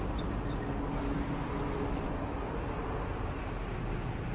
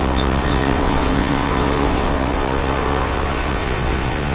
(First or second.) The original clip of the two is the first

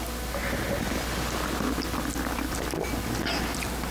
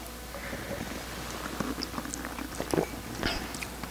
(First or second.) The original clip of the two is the first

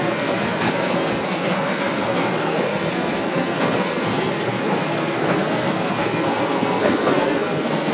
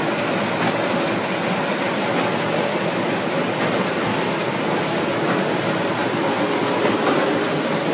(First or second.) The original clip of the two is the second